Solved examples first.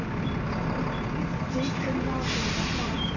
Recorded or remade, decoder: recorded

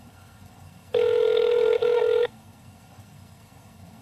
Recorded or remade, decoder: remade, codec, SNAC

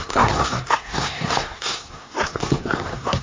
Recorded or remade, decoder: remade, codec, SNAC